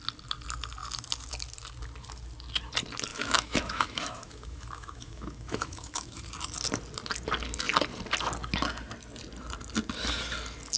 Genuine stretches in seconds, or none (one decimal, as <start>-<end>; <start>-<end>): 0.0-3.1; 6.2-10.8